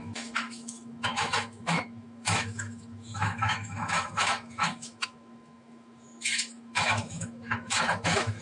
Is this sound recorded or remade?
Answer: remade